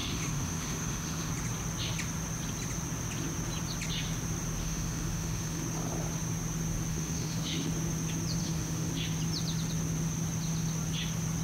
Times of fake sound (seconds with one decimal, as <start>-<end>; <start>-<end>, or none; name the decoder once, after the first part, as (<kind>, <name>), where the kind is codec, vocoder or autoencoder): 0.0-1.3 (autoencoder, DAC-VAE); 4.6-5.6; 6.9-7.7; 8.4-8.9

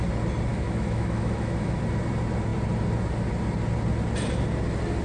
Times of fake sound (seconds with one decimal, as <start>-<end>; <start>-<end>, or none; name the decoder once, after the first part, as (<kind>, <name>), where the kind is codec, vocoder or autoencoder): 0.5-1.8 (autoencoder, DAC-VAE)